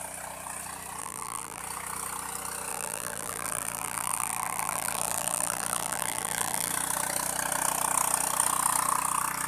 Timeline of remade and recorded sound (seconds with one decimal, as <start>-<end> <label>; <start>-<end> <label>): 0.0-1.0 recorded; 1.0-1.6 remade; 1.6-2.7 recorded; 2.7-6.7 remade; 6.7-9.5 recorded